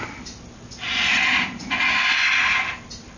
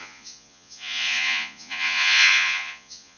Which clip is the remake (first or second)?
second